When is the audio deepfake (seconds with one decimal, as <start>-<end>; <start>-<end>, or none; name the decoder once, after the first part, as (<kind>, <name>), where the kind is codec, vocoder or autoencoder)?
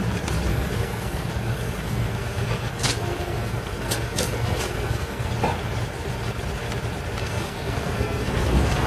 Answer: 0.5-5.3 (codec, SNAC); 7.2-8.9